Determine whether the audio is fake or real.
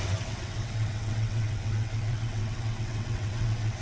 fake